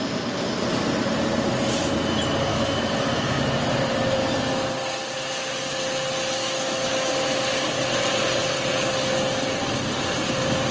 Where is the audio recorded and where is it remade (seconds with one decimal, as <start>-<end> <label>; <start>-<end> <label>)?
0.0-2.5 recorded; 2.5-3.4 remade; 3.4-6.4 recorded; 6.4-7.1 remade; 7.1-10.7 recorded